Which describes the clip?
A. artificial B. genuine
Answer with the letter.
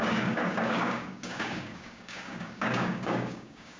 A